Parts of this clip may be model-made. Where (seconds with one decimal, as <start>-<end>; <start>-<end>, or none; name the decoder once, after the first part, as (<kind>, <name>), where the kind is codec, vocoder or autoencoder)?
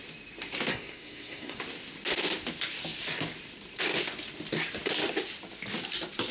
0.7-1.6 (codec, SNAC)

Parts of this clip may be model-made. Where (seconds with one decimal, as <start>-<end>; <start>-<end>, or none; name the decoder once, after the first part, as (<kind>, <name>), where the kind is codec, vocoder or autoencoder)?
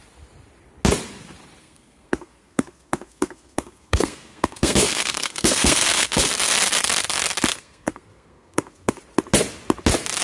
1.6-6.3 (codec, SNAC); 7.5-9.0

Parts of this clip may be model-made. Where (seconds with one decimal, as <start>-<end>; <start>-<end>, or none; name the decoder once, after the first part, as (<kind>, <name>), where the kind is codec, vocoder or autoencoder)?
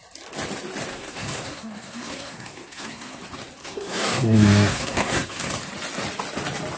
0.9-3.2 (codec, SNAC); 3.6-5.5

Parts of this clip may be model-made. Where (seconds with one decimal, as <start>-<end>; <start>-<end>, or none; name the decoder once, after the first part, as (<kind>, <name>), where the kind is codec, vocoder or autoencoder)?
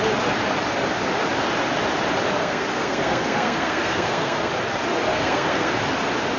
2.4-4.5 (codec, SNAC); 5.1-5.7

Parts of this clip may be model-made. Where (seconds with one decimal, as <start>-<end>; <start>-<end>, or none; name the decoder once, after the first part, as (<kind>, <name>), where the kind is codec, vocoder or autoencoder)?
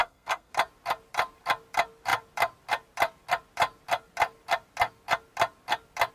0.0-0.5 (codec, SNAC)